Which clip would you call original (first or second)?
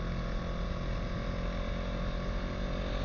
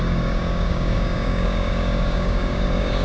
first